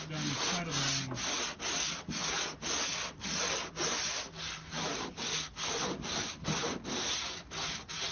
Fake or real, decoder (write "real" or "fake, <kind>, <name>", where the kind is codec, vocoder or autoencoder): real